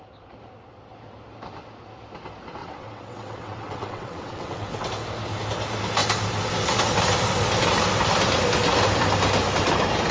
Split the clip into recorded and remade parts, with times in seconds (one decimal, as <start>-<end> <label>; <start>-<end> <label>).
0.0-2.6 recorded; 2.6-4.9 remade; 4.9-10.1 recorded

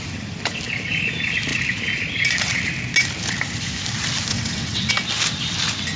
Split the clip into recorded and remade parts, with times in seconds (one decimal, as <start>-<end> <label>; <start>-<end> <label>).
0.0-4.3 recorded; 4.3-4.9 remade; 4.9-6.0 recorded

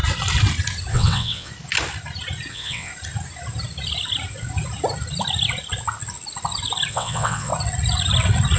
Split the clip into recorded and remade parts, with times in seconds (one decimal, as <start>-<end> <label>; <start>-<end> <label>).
0.0-0.9 recorded; 0.9-1.5 remade; 1.5-2.5 recorded; 2.5-2.9 remade; 2.9-6.9 recorded; 6.9-7.5 remade; 7.5-8.6 recorded